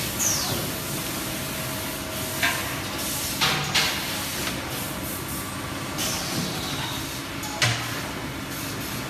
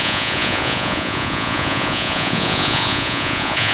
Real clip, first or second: first